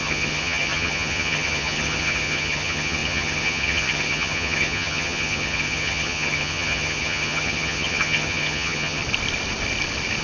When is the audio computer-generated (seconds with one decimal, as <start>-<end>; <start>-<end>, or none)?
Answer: 0.0-9.0